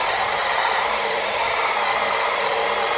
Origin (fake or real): real